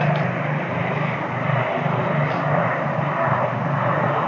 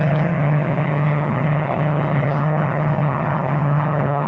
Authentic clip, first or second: first